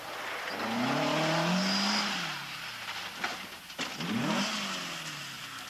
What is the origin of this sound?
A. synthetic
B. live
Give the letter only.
B